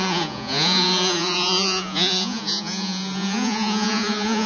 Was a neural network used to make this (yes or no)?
yes